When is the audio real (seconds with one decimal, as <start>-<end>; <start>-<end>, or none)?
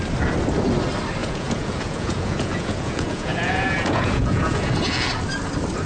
0.0-1.2; 4.7-5.9